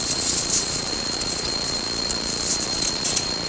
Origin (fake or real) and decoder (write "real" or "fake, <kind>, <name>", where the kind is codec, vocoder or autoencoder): fake, vocoder, Vocos